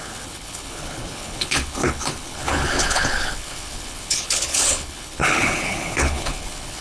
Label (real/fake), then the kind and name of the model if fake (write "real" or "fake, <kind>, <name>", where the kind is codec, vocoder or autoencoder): fake, codec, HILCodec